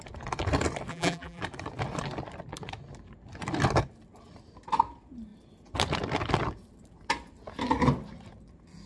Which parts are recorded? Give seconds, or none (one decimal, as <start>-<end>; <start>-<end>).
0.0-0.9; 1.4-8.9